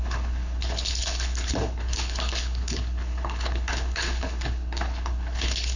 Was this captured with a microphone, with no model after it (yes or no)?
no